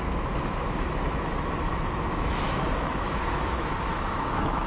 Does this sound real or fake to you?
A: fake